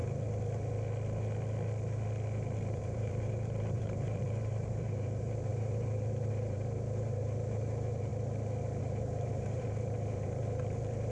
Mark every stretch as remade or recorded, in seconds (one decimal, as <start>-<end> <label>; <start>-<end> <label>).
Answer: 0.0-2.6 recorded; 2.6-8.1 remade; 8.1-8.8 recorded; 8.8-11.1 remade